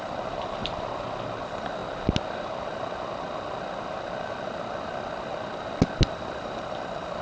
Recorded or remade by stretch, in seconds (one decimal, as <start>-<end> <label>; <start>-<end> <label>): 0.0-0.6 remade; 0.6-1.4 recorded; 1.4-1.8 remade; 1.8-6.1 recorded; 6.1-7.2 remade